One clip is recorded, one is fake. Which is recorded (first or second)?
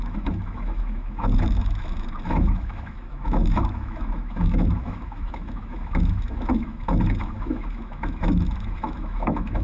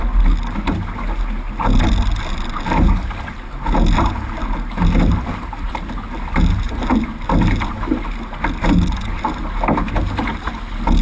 second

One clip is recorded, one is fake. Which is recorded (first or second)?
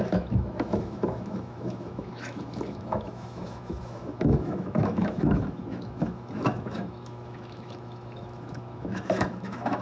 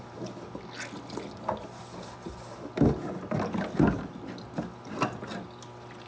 second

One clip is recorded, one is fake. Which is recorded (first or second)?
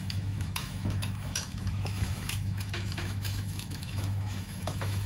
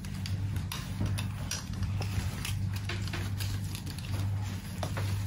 second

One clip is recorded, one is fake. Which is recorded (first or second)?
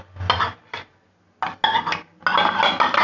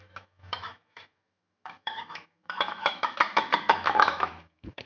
first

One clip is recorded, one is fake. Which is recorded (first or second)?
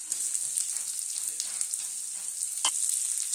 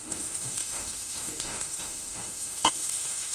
first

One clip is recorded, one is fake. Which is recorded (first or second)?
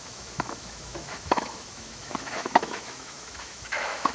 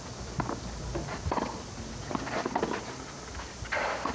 second